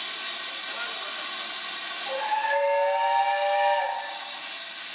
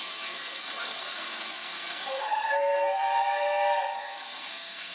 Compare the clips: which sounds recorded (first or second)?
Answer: first